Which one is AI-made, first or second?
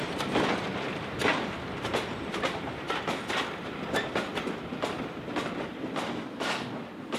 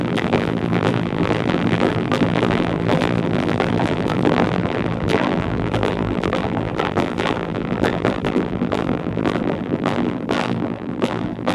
second